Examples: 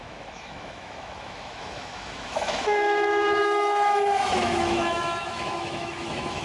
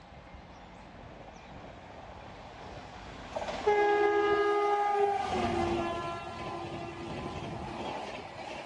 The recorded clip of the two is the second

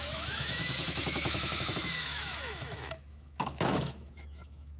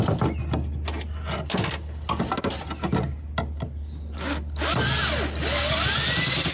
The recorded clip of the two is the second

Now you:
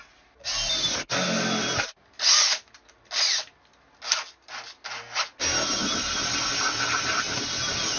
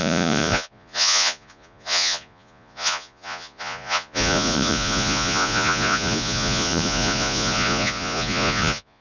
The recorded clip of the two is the first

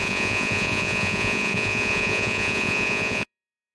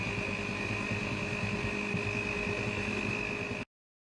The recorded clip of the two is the second